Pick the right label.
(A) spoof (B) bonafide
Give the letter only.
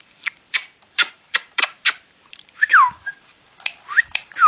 A